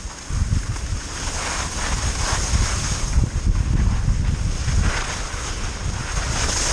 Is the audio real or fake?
real